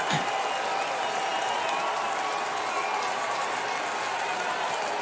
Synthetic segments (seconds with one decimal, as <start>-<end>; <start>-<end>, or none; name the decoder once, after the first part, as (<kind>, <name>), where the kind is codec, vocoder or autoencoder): none